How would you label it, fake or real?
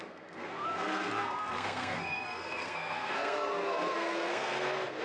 fake